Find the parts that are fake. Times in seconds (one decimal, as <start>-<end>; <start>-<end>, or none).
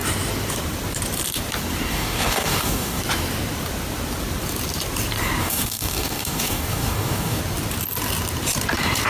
1.9-3.0; 5.4-7.4